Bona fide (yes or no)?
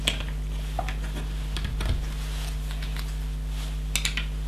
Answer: yes